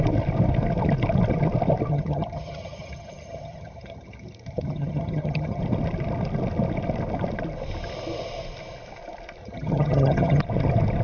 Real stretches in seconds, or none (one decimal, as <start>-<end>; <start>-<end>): 0.0-1.9; 5.6-9.4; 10.4-11.0